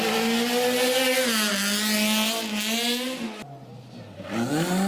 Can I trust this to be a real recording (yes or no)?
yes